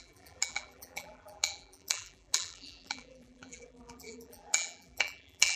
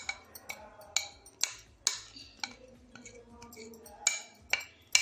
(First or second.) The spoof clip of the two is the first